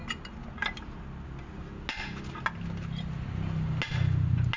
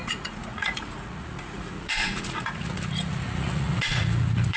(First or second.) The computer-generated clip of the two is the second